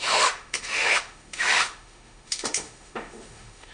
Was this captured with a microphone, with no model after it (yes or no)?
no